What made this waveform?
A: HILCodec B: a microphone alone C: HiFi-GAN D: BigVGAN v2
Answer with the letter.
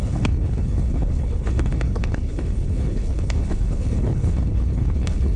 A